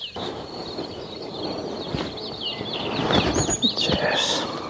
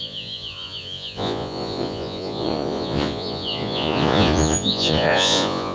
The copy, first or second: second